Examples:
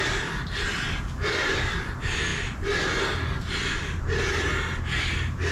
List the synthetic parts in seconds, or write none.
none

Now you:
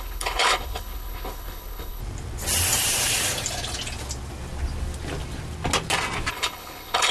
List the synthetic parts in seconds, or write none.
0.0-2.0 (codec, HILCodec); 6.3-7.1